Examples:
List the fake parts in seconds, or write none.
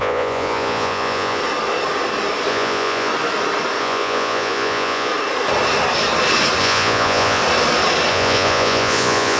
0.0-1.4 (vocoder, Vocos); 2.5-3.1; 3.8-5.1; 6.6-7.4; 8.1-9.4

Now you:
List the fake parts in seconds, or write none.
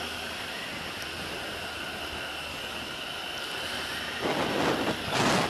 2.5-3.0 (codec, DAC)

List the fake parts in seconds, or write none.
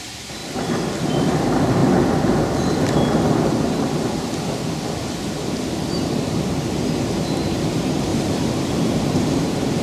0.0-0.4 (vocoder, BigVGAN v2); 1.4-1.8; 5.9-8.1; 8.8-9.8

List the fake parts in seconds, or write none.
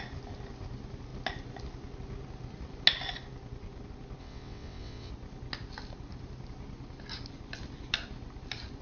4.2-5.1 (vocoder, WaveNeXt)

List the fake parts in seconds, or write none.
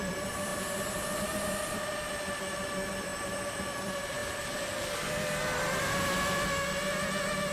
0.0-4.2 (vocoder, BigVGAN v2)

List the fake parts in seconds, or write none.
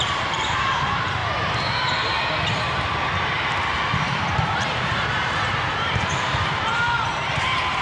0.0-1.2 (vocoder, BigVGAN v2); 4.0-7.8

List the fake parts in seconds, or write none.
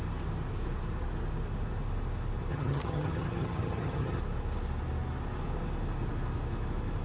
2.5-4.2 (vocoder, HiFi-GAN)